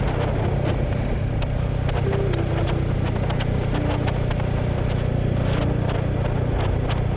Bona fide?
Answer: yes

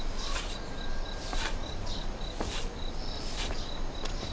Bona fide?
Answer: yes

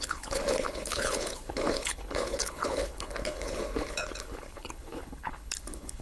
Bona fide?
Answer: no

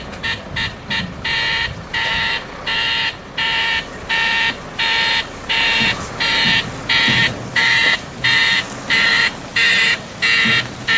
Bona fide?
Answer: yes